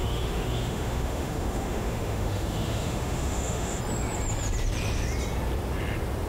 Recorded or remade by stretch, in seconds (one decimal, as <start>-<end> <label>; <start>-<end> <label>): 0.0-3.8 remade; 3.8-6.3 recorded

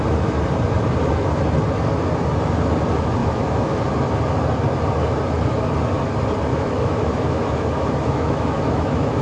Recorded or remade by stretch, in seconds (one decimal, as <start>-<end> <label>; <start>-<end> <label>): 0.0-3.2 recorded; 3.2-3.8 remade; 3.8-6.5 recorded; 6.5-9.2 remade

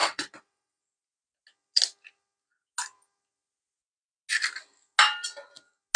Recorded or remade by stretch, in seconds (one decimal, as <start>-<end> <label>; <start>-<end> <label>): 0.0-0.8 remade; 0.8-6.0 recorded

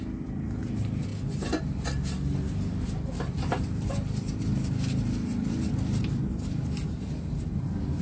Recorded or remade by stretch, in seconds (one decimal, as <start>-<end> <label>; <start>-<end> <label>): 0.0-8.0 recorded

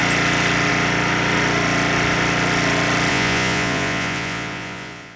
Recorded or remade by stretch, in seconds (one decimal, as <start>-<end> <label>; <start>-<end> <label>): 0.0-3.1 recorded; 3.1-5.2 remade

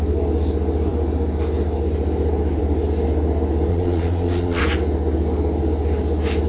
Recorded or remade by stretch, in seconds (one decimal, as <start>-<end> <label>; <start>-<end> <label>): 0.0-3.7 recorded; 3.7-4.6 remade; 4.6-6.5 recorded

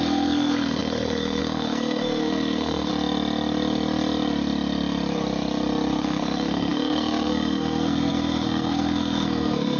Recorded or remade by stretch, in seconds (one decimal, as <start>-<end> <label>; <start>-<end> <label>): 0.0-2.9 remade; 2.9-6.0 recorded; 6.0-9.8 remade

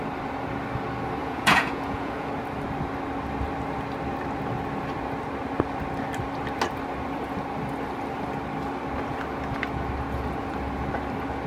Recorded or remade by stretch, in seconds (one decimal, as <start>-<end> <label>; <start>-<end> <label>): 0.0-1.2 recorded; 1.2-2.3 remade; 2.3-11.5 recorded